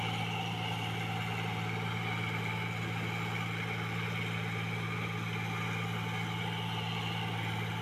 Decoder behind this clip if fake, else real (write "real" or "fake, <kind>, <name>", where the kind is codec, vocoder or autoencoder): real